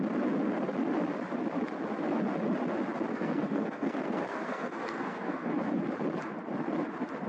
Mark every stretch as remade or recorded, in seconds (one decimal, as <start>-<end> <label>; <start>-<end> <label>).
0.0-3.1 recorded; 3.1-5.5 remade; 5.5-7.3 recorded